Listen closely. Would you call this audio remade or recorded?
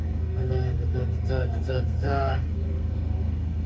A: remade